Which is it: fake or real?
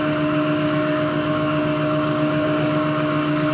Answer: fake